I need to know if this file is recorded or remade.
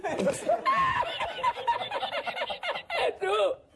recorded